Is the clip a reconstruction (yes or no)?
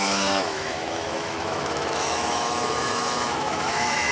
yes